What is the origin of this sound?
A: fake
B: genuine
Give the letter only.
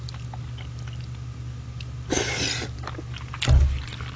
B